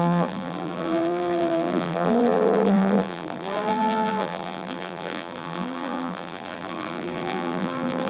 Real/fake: fake